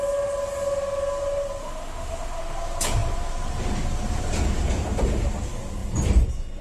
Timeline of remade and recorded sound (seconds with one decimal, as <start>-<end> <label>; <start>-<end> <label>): 0.0-1.6 recorded; 1.6-2.4 remade; 2.4-6.6 recorded